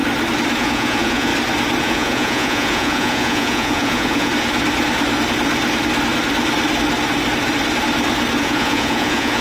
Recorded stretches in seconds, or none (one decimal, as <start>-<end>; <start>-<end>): 0.0-0.6; 1.3-1.8; 4.3-8.4